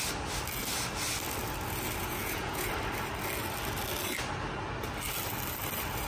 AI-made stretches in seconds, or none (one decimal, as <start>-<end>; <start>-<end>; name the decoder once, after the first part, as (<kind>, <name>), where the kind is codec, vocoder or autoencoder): 2.0-2.7 (vocoder, Vocos)